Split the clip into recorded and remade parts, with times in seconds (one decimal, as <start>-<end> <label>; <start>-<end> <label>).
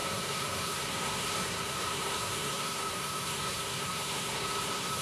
0.0-5.0 remade